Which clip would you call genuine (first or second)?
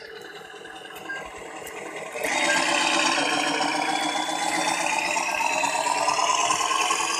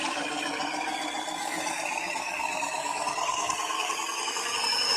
first